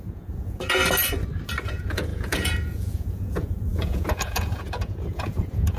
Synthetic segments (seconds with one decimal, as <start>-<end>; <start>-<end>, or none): 0.0-0.8; 1.7-5.8